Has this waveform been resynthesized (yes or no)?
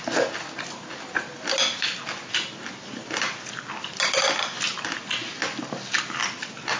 no